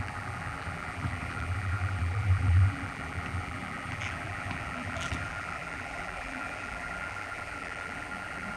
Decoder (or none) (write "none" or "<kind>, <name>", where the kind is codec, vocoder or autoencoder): vocoder, BigVGAN v2